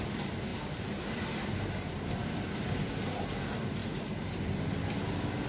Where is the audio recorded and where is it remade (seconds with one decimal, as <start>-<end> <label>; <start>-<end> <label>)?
0.0-0.5 recorded; 0.5-2.9 remade; 2.9-3.8 recorded; 3.8-4.3 remade; 4.3-5.5 recorded

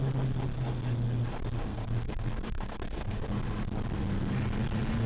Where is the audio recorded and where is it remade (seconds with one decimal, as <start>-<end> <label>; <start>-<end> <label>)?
0.0-1.7 recorded; 1.7-3.2 remade; 3.2-5.1 recorded

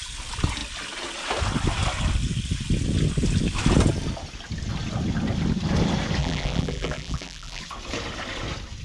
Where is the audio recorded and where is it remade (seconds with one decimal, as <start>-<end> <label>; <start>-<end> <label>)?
0.0-6.2 recorded; 6.2-7.6 remade; 7.6-8.8 recorded

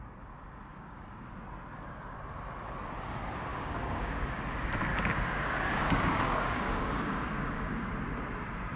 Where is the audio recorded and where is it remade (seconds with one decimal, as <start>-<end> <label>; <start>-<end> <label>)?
0.0-0.7 recorded; 0.7-1.3 remade; 1.3-3.5 recorded; 3.5-4.4 remade; 4.4-4.9 recorded; 4.9-7.9 remade; 7.9-8.8 recorded

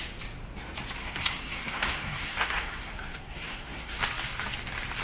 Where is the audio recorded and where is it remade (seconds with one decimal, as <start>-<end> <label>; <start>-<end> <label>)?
0.0-1.0 recorded; 1.0-4.0 remade; 4.0-5.0 recorded

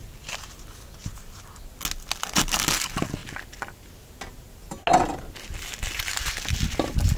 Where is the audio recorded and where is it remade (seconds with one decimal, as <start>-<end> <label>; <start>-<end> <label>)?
0.0-0.6 remade; 0.6-7.2 recorded

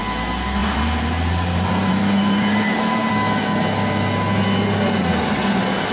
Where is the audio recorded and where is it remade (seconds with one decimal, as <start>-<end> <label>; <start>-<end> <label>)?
0.0-0.6 recorded; 0.6-3.1 remade; 3.1-5.9 recorded

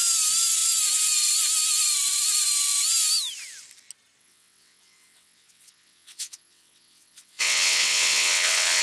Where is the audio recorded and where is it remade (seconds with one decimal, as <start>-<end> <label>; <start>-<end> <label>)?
0.0-4.2 recorded; 4.2-8.8 remade